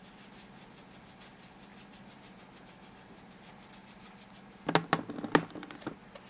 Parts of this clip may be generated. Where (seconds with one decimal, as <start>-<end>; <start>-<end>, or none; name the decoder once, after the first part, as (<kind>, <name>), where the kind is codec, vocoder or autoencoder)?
none